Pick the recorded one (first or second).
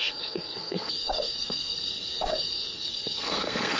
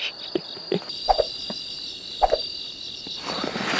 second